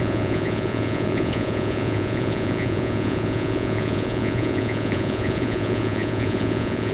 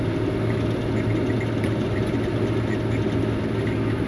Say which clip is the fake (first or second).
first